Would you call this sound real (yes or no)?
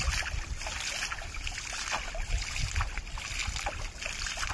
yes